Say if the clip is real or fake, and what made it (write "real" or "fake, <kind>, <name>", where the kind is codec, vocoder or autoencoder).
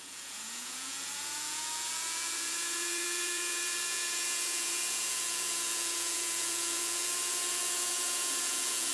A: fake, vocoder, Vocos